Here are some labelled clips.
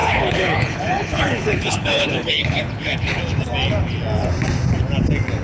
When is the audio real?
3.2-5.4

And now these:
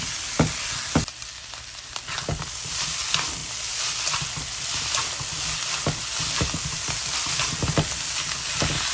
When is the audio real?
0.0-8.9

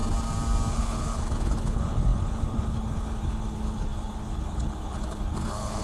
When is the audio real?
0.0-0.7